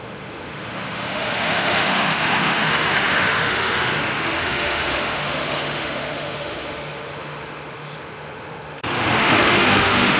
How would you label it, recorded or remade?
remade